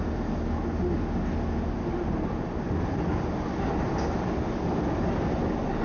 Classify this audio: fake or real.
real